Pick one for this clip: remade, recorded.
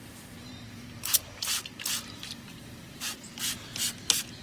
remade